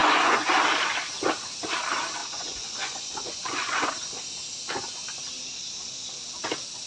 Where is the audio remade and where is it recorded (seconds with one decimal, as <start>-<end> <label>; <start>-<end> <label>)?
0.0-0.5 remade; 0.5-2.2 recorded; 2.2-3.9 remade; 3.9-6.9 recorded